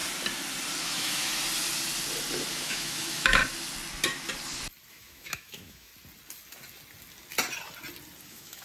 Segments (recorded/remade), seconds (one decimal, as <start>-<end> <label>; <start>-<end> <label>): 0.0-0.8 recorded; 0.8-1.3 remade; 1.3-2.5 recorded; 2.5-3.4 remade; 3.4-4.9 recorded; 4.9-5.9 remade; 5.9-8.2 recorded; 8.2-8.6 remade